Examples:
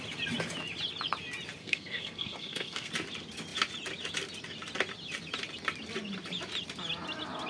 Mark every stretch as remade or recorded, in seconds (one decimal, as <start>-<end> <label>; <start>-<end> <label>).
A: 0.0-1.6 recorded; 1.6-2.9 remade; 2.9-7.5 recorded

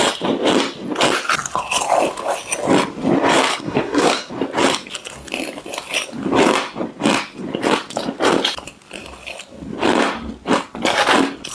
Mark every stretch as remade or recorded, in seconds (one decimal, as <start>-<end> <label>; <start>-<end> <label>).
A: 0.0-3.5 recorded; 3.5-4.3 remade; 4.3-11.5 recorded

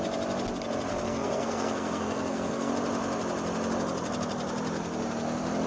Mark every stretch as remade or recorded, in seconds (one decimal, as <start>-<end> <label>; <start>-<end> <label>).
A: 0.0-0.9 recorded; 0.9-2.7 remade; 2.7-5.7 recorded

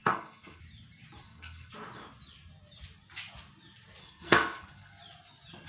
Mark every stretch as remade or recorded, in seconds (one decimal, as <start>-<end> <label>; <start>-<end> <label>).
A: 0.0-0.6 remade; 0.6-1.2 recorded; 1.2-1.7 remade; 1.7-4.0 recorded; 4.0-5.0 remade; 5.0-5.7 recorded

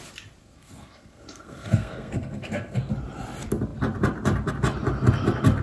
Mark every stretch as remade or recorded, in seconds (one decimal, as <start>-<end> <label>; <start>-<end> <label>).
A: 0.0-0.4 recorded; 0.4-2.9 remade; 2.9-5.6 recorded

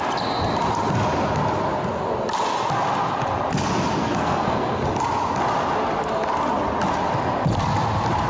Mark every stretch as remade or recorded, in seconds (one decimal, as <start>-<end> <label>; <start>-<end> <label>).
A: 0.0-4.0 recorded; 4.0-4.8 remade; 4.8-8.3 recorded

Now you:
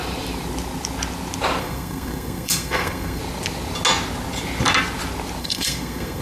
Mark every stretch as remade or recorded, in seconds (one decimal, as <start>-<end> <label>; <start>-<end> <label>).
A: 0.0-1.6 recorded; 1.6-3.2 remade; 3.2-5.4 recorded; 5.4-6.2 remade